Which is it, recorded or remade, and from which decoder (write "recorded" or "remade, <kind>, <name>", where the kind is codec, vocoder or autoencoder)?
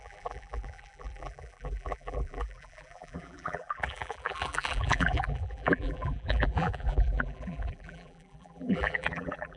remade, vocoder, BigVGAN v2